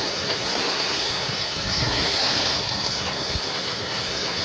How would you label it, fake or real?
fake